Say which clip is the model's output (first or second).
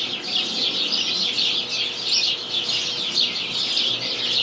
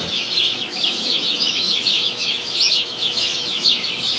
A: second